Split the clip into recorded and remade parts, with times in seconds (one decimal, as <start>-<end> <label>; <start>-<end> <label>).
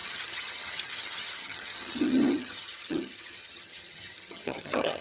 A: 0.0-5.0 remade